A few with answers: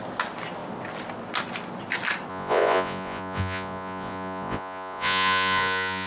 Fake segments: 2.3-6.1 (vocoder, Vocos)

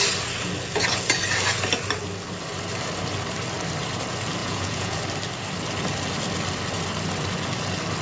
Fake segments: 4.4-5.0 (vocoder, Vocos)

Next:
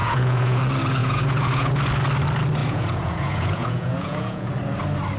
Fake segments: 0.0-0.6 (vocoder, Vocos); 1.0-1.7; 2.6-4.5